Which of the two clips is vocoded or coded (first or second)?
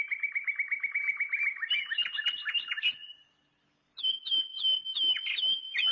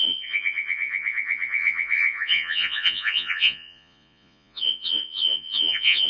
second